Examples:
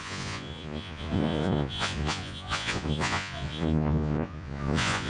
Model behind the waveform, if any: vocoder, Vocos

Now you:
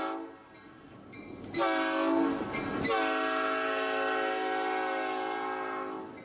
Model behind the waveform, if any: none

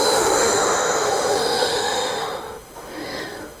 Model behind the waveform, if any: autoencoder, DAC-VAE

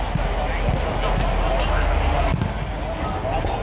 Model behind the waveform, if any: none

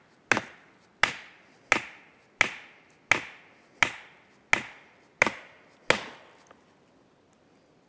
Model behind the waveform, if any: none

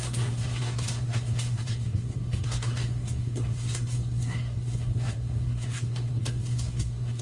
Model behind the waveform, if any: codec, SNAC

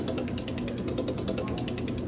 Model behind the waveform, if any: none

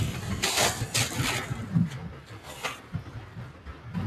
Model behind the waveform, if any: none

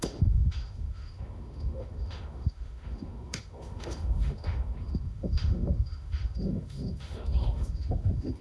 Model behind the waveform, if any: autoencoder, DAC-VAE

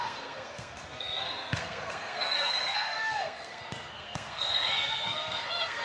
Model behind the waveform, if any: codec, SNAC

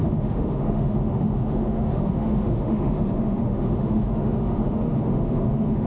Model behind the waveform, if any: autoencoder, DAC-VAE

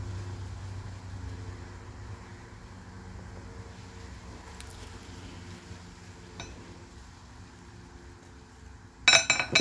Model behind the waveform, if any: none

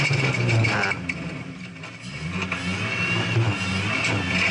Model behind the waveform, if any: none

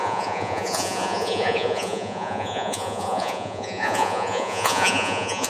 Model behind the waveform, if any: vocoder, Vocos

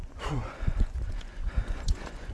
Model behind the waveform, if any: vocoder, Vocos